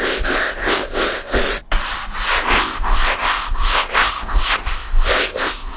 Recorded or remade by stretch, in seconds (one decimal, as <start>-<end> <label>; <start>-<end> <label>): 0.0-1.4 remade; 1.4-2.4 recorded; 2.4-5.8 remade